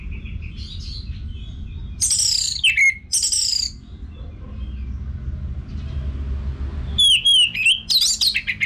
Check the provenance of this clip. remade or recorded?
recorded